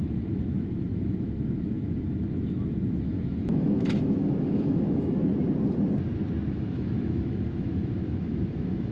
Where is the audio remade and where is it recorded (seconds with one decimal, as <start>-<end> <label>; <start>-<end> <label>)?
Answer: 0.0-5.2 remade; 5.2-6.5 recorded; 6.5-8.9 remade

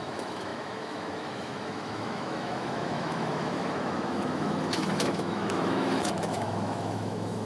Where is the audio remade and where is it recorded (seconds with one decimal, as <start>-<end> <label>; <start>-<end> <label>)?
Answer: 0.0-7.5 remade

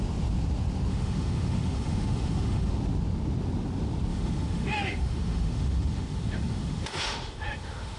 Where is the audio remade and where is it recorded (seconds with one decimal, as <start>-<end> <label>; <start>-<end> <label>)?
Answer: 0.0-0.9 recorded; 0.9-2.7 remade; 2.7-4.1 recorded; 4.1-8.0 remade

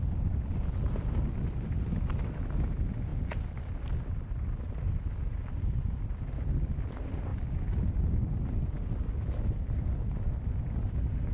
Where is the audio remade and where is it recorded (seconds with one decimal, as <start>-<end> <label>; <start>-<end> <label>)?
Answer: 0.0-11.3 recorded